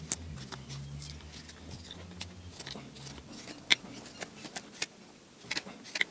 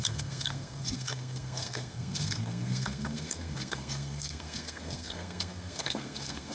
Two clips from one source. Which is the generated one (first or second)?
second